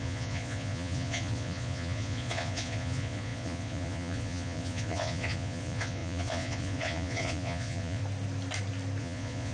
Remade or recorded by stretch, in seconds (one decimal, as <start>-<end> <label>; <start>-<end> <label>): 0.0-8.0 remade; 8.0-9.0 recorded; 9.0-9.5 remade